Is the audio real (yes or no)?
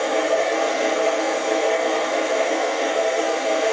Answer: no